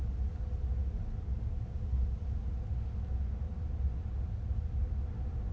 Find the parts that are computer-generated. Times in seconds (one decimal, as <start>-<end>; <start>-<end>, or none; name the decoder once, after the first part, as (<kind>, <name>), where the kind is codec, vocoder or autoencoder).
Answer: none